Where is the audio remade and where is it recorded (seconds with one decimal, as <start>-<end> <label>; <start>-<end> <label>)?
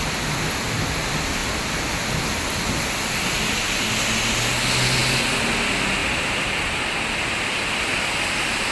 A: 0.0-8.7 recorded